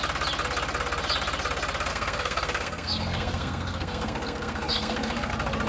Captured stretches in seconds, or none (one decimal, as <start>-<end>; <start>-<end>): 0.0-1.9; 5.3-5.7